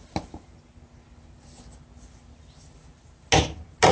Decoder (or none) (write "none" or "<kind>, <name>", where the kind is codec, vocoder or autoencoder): none